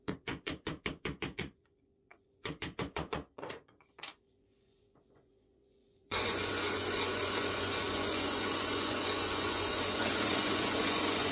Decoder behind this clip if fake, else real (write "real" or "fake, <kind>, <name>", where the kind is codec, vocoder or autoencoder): fake, vocoder, Vocos